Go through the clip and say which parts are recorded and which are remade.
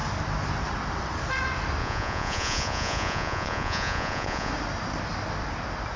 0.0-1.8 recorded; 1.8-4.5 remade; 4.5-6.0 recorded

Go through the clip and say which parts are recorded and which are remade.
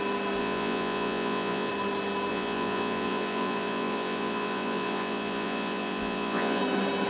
0.0-0.4 recorded; 0.4-1.7 remade; 1.7-2.3 recorded; 2.3-6.6 remade; 6.6-7.1 recorded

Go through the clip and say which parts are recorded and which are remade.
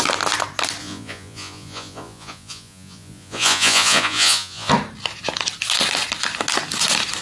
0.0-0.8 recorded; 0.8-4.7 remade; 4.7-7.2 recorded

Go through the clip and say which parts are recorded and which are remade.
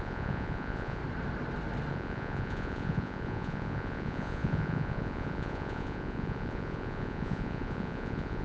0.0-1.0 remade; 1.0-1.9 recorded; 1.9-8.4 remade